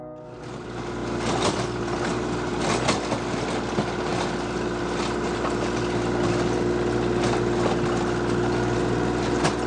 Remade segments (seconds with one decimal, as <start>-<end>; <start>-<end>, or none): none